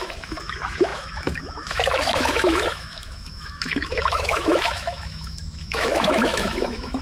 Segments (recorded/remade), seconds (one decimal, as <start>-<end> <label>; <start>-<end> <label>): 0.0-7.0 remade